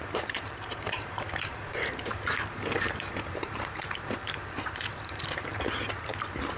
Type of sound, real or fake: fake